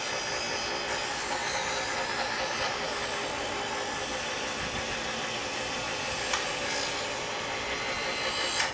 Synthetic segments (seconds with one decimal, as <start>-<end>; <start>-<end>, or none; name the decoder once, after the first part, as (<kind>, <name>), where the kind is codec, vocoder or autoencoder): none